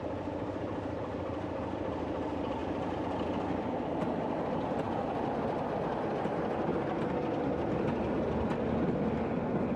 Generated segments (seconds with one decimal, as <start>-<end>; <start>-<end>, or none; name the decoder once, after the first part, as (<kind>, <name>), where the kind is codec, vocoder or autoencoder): 0.0-2.6 (vocoder, BigVGAN v2); 4.4-6.7; 7.7-8.5